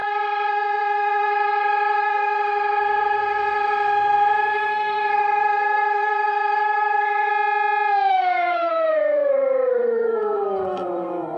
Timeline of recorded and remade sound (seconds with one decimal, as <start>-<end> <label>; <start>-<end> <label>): 0.0-7.3 remade; 7.3-8.1 recorded; 8.1-11.4 remade